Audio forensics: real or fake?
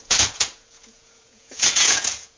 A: fake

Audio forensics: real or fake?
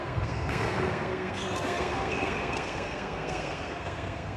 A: fake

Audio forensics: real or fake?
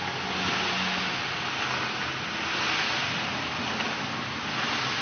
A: real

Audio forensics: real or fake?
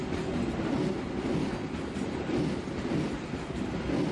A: real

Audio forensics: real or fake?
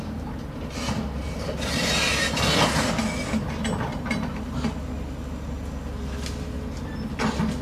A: real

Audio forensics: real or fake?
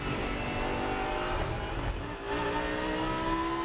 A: real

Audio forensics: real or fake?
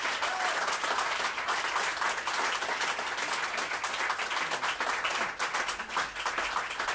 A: real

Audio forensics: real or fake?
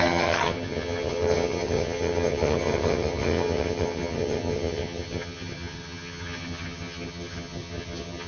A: fake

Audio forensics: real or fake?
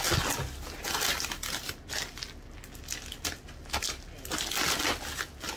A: real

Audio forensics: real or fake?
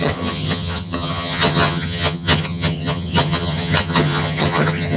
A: fake